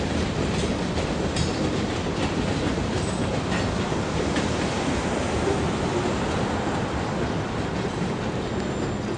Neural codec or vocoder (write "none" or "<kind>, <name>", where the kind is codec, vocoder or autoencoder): none